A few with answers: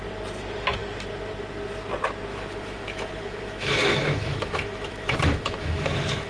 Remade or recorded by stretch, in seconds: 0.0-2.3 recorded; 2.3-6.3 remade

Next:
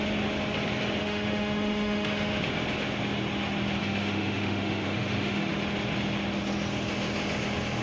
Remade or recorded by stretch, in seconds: 0.0-1.0 recorded; 1.0-2.4 remade; 2.4-3.8 recorded; 3.8-5.5 remade; 5.5-7.8 recorded

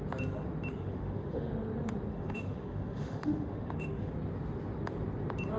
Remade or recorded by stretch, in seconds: 0.0-0.7 recorded; 0.7-1.5 remade; 1.5-2.1 recorded; 2.1-4.1 remade; 4.1-5.6 recorded

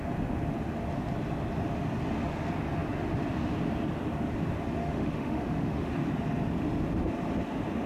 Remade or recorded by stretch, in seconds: 0.0-4.8 recorded; 4.8-5.9 remade; 5.9-7.9 recorded